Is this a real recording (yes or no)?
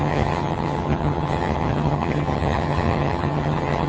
no